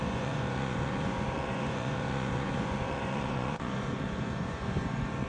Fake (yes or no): yes